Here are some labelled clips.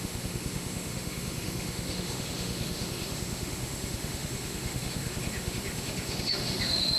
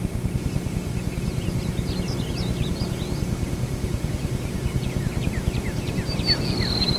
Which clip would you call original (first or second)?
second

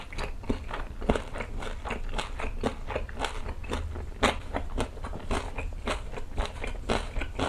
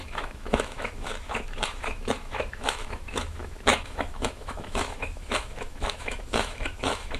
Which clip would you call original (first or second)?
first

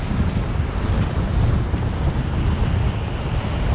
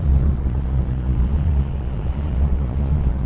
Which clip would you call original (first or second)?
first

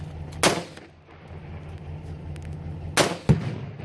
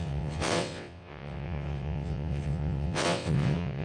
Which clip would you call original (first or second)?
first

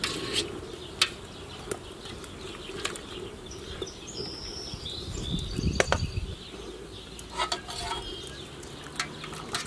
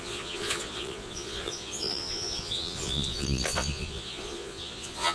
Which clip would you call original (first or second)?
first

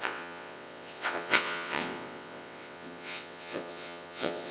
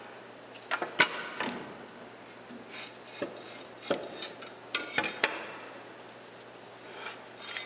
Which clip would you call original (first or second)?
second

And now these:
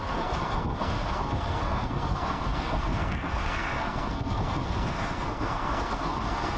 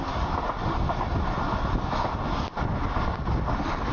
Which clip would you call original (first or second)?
second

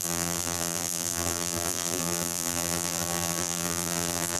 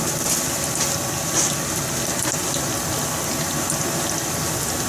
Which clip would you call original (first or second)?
second